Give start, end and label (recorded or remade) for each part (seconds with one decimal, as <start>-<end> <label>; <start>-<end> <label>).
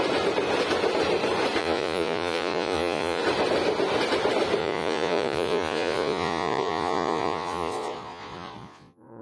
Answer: 0.0-1.6 recorded; 1.6-3.2 remade; 3.2-4.6 recorded; 4.6-9.2 remade